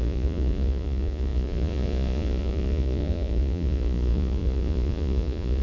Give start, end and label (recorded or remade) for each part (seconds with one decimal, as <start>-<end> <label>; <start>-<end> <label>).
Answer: 0.0-5.6 remade